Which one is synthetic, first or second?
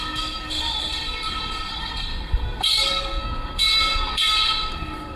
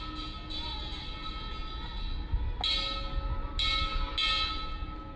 first